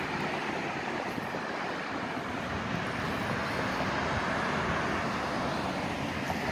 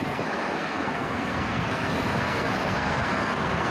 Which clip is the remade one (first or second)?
second